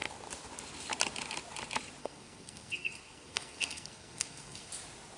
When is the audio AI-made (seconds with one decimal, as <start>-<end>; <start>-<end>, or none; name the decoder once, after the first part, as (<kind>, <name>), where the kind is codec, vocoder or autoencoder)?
2.0-4.7 (codec, SNAC)

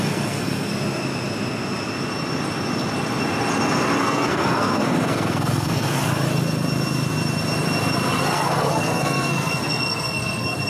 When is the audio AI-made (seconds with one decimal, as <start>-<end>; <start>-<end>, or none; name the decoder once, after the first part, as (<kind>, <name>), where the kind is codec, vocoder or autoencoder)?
0.0-0.7 (codec, SNAC); 4.0-6.0; 8.2-10.7

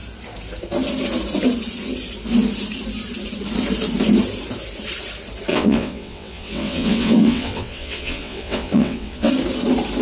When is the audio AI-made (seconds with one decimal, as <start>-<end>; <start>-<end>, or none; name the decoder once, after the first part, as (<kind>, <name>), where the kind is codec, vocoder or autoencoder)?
5.5-9.3 (vocoder, WaveNeXt)

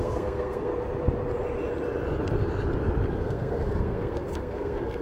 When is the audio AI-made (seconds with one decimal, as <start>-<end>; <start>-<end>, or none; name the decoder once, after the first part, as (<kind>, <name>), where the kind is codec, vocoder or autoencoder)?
0.0-0.7 (codec, SNAC); 3.1-5.0

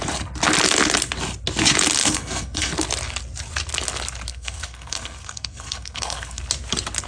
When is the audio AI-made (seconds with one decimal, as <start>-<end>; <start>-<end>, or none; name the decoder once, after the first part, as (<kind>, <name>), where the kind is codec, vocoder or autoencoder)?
2.0-2.7 (codec, SNAC); 4.3-6.4